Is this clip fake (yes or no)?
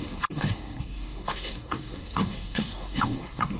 yes